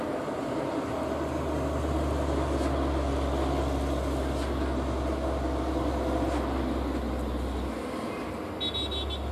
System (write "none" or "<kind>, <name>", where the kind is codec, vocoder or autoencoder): none